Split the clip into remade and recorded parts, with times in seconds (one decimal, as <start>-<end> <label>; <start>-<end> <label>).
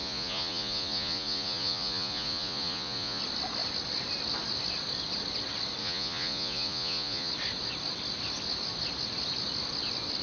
0.0-3.2 remade; 3.2-5.8 recorded; 5.8-7.3 remade; 7.3-10.2 recorded